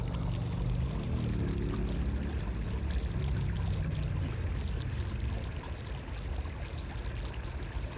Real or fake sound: real